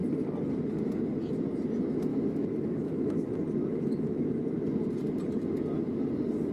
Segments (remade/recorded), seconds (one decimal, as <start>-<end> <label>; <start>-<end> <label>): 0.0-2.1 recorded; 2.1-3.3 remade; 3.3-3.7 recorded; 3.7-4.4 remade; 4.4-6.5 recorded